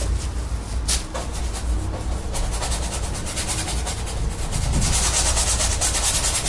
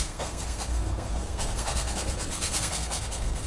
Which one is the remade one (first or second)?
second